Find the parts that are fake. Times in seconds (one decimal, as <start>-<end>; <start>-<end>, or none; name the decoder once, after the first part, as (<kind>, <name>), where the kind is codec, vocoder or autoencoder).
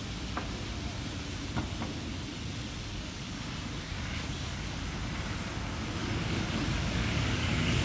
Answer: 2.9-4.8 (codec, DAC); 6.0-7.8